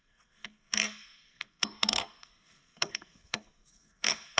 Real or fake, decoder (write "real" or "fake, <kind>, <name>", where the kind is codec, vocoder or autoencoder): fake, codec, SNAC